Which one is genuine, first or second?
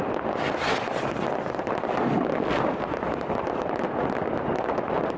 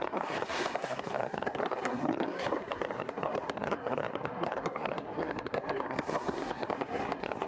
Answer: first